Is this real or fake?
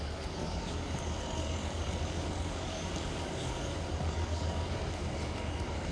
fake